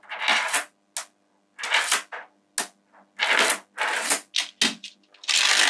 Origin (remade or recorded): recorded